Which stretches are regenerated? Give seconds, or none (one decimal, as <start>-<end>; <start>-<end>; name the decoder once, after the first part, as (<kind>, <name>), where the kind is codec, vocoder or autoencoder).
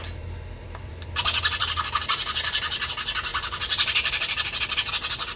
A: 0.0-2.8 (vocoder, BigVGAN v2); 3.3-4.9